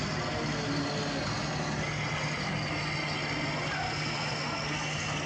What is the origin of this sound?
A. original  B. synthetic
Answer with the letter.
A